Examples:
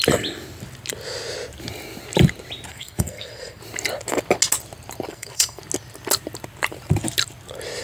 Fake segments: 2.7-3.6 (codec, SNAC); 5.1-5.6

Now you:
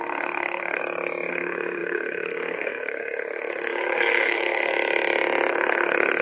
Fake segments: 0.0-0.8 (codec, SNAC); 1.3-4.7; 5.5-6.2